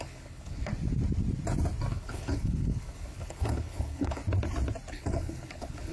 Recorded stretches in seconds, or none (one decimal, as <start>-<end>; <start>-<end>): 0.7-1.9; 4.2-4.9